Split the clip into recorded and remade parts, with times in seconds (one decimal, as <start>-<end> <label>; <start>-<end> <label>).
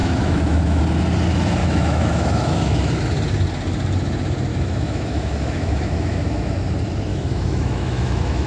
0.0-0.8 remade; 0.8-1.6 recorded; 1.6-2.9 remade; 2.9-4.5 recorded; 4.5-6.6 remade; 6.6-7.1 recorded; 7.1-8.5 remade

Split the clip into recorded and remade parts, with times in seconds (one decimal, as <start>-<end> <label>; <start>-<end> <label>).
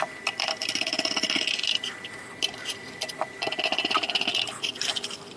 0.0-0.6 recorded; 0.6-1.4 remade; 1.4-2.8 recorded; 2.8-3.5 remade; 3.5-5.4 recorded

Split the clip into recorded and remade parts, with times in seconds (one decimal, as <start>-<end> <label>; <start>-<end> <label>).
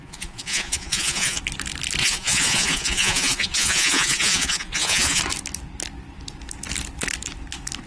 0.0-1.4 remade; 1.4-2.0 recorded; 2.0-5.2 remade; 5.2-7.9 recorded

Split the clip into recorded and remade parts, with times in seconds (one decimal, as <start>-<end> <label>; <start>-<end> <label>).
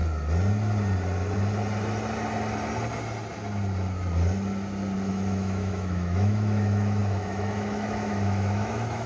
0.0-5.1 recorded; 5.1-9.1 remade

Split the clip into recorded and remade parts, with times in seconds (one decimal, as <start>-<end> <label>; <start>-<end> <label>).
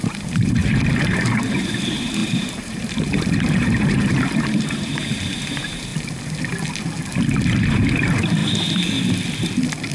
0.0-5.9 remade; 5.9-7.6 recorded; 7.6-8.4 remade; 8.4-9.9 recorded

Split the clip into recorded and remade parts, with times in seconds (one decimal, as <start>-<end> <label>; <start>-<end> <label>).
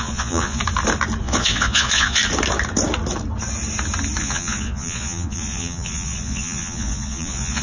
0.0-0.6 remade; 0.6-1.2 recorded; 1.2-2.2 remade; 2.2-4.2 recorded; 4.2-7.6 remade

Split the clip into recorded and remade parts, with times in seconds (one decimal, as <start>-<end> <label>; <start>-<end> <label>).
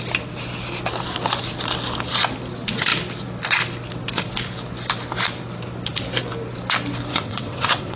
0.0-7.1 recorded; 7.1-8.0 remade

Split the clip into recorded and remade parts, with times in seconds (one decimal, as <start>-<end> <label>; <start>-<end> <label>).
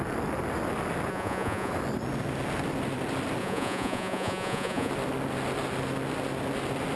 0.0-1.1 recorded; 1.1-1.7 remade; 1.7-3.4 recorded; 3.4-4.9 remade; 4.9-7.0 recorded